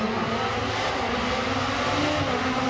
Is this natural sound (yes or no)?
yes